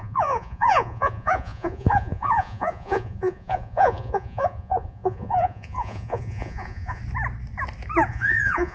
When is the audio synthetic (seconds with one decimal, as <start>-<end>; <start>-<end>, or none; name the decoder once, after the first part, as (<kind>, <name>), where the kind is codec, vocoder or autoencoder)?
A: 0.0-7.0 (vocoder, Vocos); 8.1-8.7